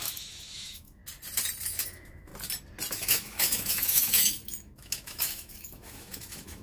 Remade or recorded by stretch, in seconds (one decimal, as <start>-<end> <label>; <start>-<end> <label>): 0.0-1.0 remade; 1.0-1.6 recorded; 1.6-2.3 remade; 2.3-2.9 recorded; 2.9-6.6 remade